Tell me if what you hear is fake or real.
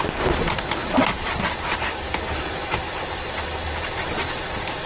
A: real